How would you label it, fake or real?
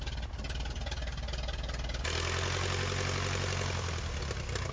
real